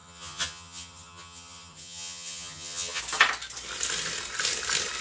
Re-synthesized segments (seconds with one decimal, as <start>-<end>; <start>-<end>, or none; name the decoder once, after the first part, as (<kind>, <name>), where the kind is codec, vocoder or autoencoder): 0.0-3.0 (vocoder, HiFi-GAN)